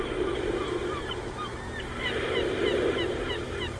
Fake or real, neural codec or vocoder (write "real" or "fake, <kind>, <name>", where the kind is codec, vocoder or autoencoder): fake, vocoder, BigVGAN v2